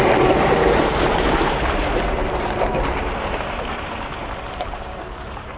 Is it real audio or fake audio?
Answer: fake